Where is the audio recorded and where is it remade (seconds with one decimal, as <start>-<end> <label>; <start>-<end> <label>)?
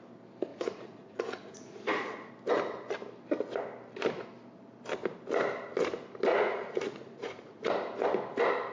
0.0-0.5 recorded; 0.5-2.3 remade; 2.3-6.3 recorded; 6.3-7.7 remade; 7.7-8.7 recorded